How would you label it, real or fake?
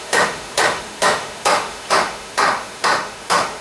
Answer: fake